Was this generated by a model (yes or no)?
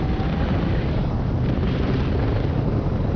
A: no